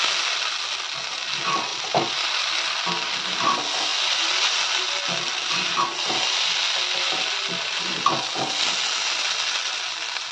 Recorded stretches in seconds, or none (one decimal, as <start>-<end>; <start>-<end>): 0.0-1.7; 2.3-10.3